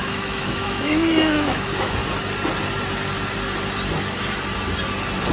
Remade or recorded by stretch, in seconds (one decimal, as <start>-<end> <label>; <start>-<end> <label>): 0.0-2.0 remade; 2.0-5.3 recorded